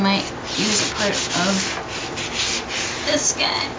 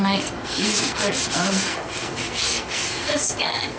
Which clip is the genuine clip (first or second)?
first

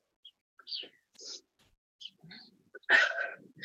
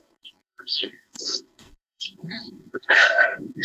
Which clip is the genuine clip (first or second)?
first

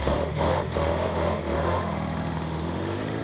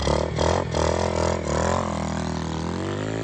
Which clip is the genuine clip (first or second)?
second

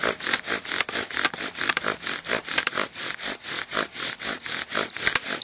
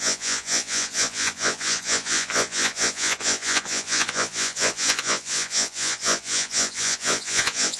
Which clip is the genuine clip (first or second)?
first